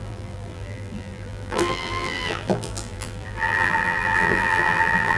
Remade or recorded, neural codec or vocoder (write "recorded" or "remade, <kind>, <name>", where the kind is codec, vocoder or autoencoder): remade, vocoder, BigVGAN v2